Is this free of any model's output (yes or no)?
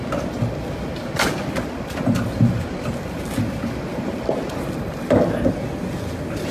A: yes